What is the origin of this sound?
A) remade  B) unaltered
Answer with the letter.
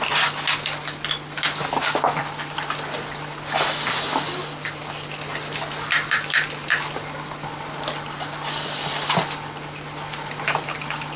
B